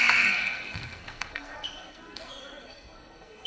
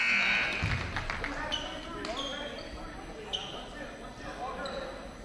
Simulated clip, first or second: first